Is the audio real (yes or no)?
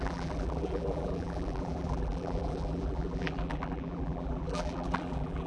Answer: no